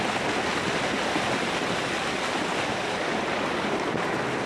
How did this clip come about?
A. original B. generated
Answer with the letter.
A